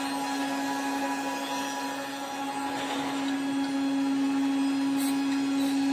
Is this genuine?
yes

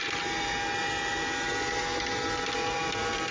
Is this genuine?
yes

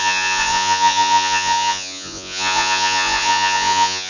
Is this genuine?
no